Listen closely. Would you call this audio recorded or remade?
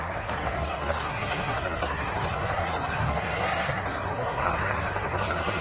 remade